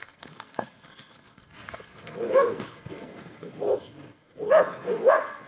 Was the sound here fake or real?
fake